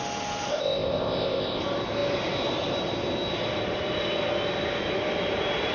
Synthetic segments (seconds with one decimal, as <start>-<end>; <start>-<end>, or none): 0.5-1.6